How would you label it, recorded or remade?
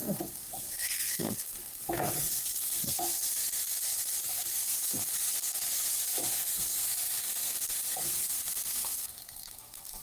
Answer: remade